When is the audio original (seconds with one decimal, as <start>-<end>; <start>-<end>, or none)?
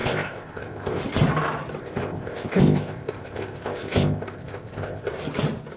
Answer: 1.0-1.8; 5.1-5.8